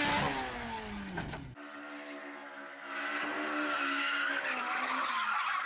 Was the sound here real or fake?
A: real